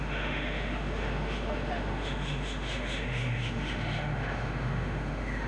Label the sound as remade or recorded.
remade